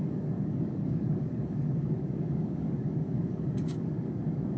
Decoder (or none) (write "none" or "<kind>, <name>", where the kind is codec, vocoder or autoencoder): codec, DAC